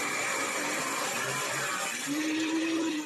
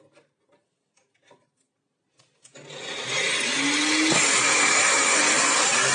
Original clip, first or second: second